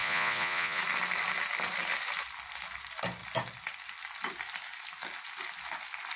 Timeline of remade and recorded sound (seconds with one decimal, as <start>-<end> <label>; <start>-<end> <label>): 0.0-0.8 remade; 0.8-6.2 recorded